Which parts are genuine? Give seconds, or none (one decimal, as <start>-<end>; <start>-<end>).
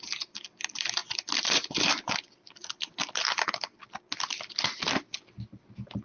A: 0.0-1.0; 3.6-6.0